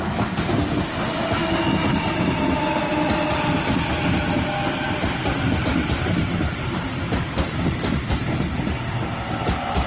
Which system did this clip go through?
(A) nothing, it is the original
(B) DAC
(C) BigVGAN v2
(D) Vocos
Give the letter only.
A